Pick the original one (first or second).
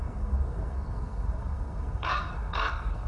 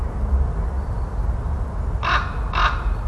second